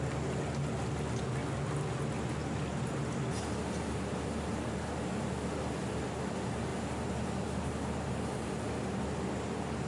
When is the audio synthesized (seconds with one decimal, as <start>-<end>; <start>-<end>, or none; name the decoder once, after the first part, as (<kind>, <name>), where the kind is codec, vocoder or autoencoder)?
none